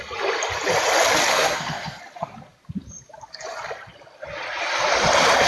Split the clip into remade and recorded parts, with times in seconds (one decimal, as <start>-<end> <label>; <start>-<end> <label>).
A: 0.0-1.3 recorded; 1.3-2.0 remade; 2.0-5.5 recorded